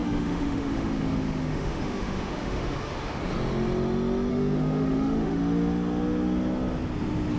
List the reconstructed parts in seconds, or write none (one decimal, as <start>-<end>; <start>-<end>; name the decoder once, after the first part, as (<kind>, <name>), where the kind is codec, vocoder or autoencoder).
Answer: 0.0-3.2 (autoencoder, DAC-VAE); 4.3-5.4

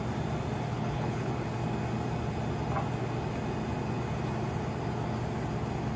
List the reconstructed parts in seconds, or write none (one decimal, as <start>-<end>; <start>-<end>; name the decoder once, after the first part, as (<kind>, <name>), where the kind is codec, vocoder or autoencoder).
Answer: 0.7-1.3 (codec, HILCodec)

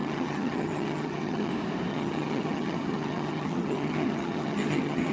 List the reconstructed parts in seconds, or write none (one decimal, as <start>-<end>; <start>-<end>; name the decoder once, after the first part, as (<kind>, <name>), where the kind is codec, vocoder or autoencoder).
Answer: 0.0-1.5 (vocoder, HiFi-GAN); 1.9-5.1

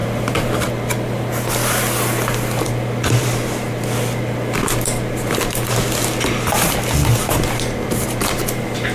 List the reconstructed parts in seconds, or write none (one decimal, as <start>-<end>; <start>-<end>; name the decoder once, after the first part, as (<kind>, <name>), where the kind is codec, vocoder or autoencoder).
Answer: 0.0-0.7 (vocoder, BigVGAN v2)

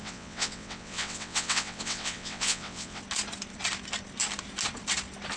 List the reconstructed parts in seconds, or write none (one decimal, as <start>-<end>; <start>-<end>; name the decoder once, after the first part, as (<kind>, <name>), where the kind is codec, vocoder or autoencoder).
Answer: 0.0-3.0 (vocoder, WaveNeXt)

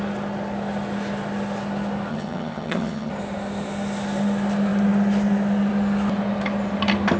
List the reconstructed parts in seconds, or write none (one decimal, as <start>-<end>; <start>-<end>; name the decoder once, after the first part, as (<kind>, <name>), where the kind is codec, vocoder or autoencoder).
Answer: 2.1-3.1 (vocoder, HiFi-GAN)